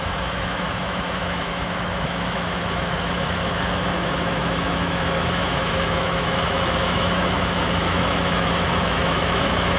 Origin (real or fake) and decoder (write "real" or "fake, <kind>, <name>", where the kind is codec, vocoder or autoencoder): fake, autoencoder, DAC-VAE